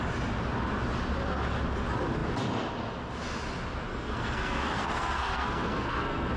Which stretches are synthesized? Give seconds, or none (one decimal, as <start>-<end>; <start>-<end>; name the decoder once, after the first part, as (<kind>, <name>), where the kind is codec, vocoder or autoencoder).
3.9-6.4 (codec, SNAC)